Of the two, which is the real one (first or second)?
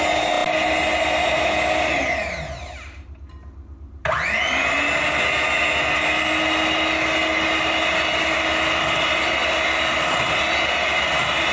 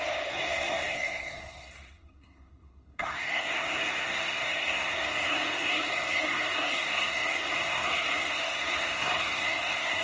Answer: first